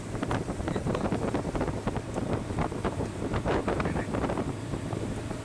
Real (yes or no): no